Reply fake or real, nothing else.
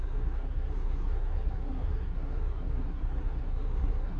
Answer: fake